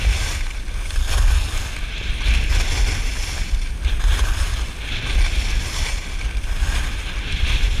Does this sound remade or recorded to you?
recorded